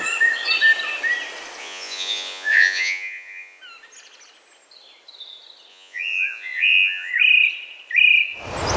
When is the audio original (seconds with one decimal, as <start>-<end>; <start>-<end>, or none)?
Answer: 0.0-1.6; 3.6-5.7; 7.1-8.8